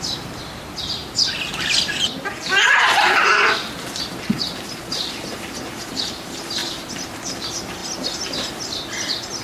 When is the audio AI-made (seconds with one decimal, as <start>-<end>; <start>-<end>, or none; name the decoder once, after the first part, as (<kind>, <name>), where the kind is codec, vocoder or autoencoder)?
none